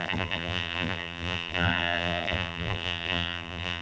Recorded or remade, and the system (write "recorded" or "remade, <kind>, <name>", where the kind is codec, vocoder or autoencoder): remade, vocoder, BigVGAN v2